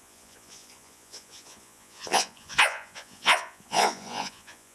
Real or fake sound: fake